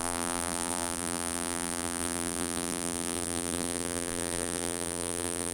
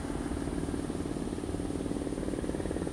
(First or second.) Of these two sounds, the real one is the second